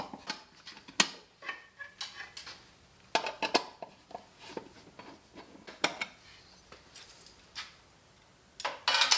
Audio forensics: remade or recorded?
recorded